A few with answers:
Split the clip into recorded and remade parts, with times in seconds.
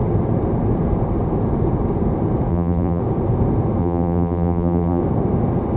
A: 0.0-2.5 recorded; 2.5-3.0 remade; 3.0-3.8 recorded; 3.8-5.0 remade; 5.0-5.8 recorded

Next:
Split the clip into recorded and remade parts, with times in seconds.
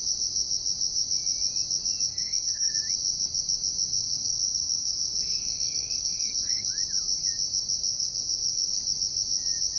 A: 0.0-2.1 recorded; 2.1-2.7 remade; 2.7-4.0 recorded; 4.0-6.7 remade; 6.7-7.9 recorded; 7.9-8.8 remade; 8.8-9.8 recorded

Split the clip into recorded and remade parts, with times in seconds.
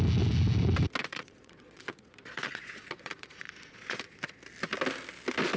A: 0.0-1.0 recorded; 1.0-4.4 remade; 4.4-5.6 recorded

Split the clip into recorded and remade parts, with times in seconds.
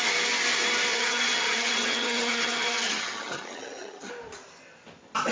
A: 0.0-0.9 recorded; 0.9-4.1 remade; 4.1-5.3 recorded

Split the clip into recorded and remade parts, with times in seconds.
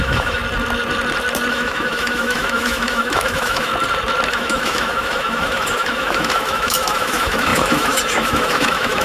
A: 0.0-0.4 remade; 0.4-1.5 recorded; 1.5-3.7 remade; 3.7-4.3 recorded; 4.3-9.0 remade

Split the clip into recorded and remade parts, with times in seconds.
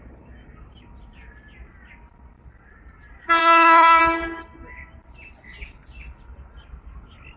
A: 0.0-3.4 recorded; 3.4-4.0 remade; 4.0-7.4 recorded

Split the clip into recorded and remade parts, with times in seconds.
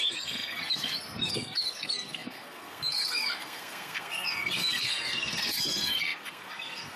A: 0.0-7.0 remade